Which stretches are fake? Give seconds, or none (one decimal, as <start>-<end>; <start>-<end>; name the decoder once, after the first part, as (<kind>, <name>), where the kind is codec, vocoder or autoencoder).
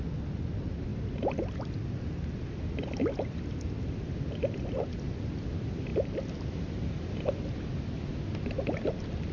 none